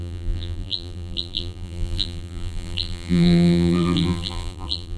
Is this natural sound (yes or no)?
no